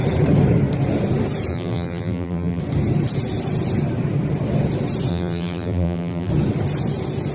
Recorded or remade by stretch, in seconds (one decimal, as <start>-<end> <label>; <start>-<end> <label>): 0.0-1.5 recorded; 1.5-2.6 remade; 2.6-5.1 recorded; 5.1-6.3 remade; 6.3-7.3 recorded